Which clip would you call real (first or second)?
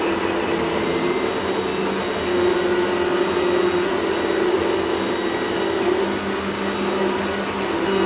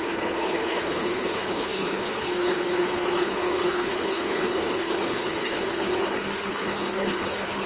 first